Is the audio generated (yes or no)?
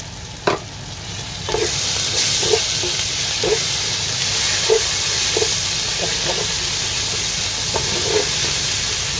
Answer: no